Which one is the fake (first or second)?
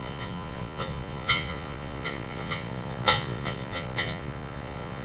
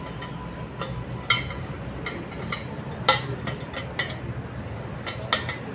first